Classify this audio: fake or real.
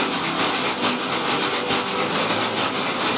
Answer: real